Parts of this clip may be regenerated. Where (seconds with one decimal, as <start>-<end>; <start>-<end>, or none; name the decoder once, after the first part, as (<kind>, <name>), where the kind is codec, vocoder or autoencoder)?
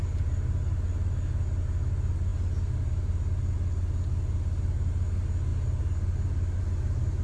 none